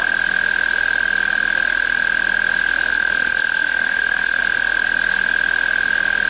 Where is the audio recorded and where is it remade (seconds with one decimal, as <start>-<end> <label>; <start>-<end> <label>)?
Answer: 0.0-2.9 recorded; 2.9-4.4 remade; 4.4-6.3 recorded

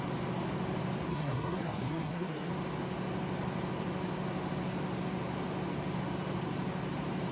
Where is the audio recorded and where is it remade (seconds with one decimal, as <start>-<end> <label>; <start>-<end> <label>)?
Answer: 0.0-1.1 recorded; 1.1-2.5 remade; 2.5-7.3 recorded

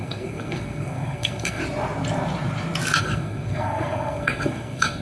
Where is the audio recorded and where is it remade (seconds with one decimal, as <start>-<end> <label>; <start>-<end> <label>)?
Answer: 0.0-1.6 remade; 1.6-3.0 recorded; 3.0-5.0 remade

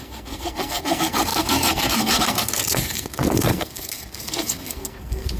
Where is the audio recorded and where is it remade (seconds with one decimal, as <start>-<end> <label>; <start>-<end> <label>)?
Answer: 0.0-5.4 remade

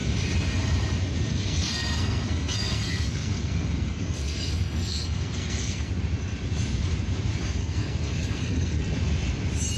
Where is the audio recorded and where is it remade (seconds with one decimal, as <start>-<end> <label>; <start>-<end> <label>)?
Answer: 0.0-1.3 recorded; 1.3-5.9 remade; 5.9-7.6 recorded; 7.6-8.8 remade; 8.8-9.8 recorded

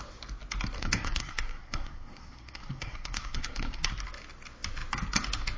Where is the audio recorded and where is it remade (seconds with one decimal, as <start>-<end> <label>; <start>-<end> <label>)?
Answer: 0.0-0.8 recorded; 0.8-3.9 remade; 3.9-5.6 recorded